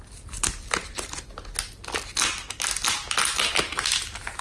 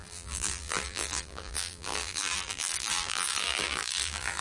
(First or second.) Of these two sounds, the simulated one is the second